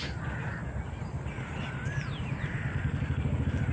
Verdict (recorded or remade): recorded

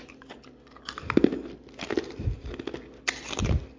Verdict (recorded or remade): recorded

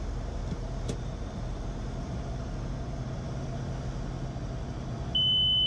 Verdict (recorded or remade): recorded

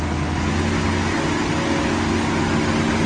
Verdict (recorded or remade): recorded